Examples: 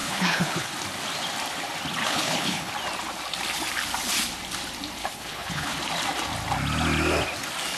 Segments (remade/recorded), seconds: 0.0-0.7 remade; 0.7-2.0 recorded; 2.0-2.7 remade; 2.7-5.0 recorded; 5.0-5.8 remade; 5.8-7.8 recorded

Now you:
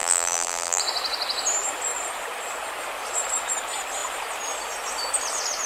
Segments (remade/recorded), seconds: 0.0-0.8 remade; 0.8-5.7 recorded

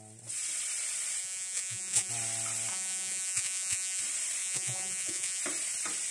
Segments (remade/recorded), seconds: 0.0-1.2 recorded; 1.2-2.1 remade; 2.1-2.7 recorded; 2.7-4.0 remade; 4.0-4.4 recorded; 4.4-5.4 remade; 5.4-6.1 recorded

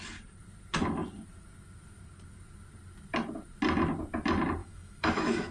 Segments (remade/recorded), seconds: 0.0-4.6 recorded; 4.6-5.5 remade

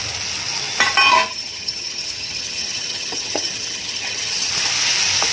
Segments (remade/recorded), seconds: 0.0-1.3 recorded; 1.3-4.5 remade; 4.5-5.3 recorded

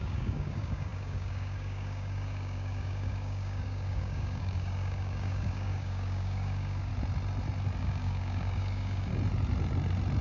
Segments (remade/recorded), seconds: 0.0-6.9 remade; 6.9-7.8 recorded; 7.8-9.1 remade; 9.1-10.2 recorded

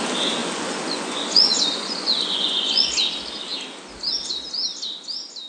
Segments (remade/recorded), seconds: 0.0-0.4 recorded; 0.4-2.9 remade; 2.9-5.5 recorded

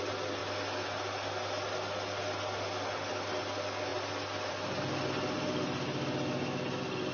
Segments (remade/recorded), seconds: 0.0-7.1 recorded